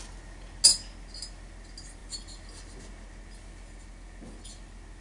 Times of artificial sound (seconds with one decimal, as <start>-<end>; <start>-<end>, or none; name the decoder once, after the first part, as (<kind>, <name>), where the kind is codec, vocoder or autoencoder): none